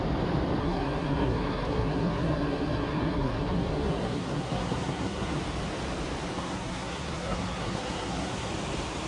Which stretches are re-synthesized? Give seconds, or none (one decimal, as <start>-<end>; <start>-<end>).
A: 0.6-5.4; 6.3-8.5